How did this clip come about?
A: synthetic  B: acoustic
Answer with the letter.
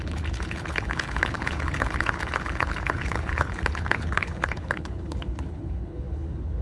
A